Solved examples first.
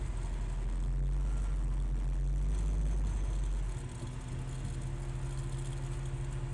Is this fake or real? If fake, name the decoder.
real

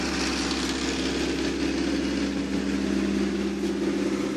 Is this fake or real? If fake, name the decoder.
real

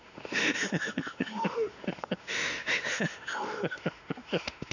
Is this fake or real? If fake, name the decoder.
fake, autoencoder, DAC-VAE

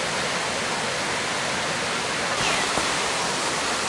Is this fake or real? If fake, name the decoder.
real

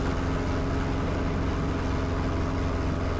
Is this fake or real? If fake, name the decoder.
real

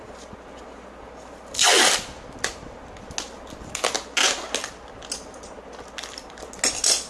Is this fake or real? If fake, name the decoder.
real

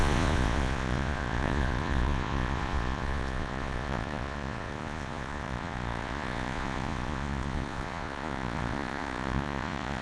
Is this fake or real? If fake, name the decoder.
fake, vocoder, Vocos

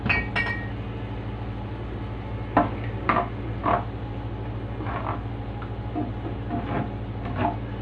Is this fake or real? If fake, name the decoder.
real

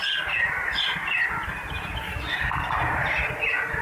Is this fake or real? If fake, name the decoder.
real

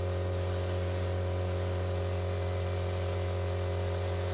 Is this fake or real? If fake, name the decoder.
real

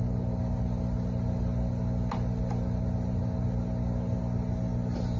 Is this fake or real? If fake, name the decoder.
real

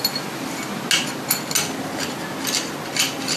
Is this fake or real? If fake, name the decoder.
real